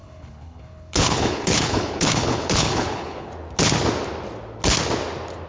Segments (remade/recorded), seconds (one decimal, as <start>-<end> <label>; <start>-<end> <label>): 0.0-3.3 remade; 3.3-5.5 recorded